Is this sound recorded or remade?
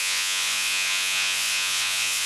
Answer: remade